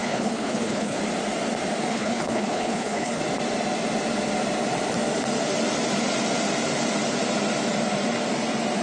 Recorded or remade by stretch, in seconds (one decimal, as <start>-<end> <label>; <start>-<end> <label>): 0.0-1.0 remade; 1.0-1.9 recorded; 1.9-3.2 remade; 3.2-8.8 recorded